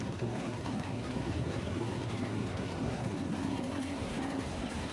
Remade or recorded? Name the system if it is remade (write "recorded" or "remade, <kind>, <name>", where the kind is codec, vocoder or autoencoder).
remade, codec, SNAC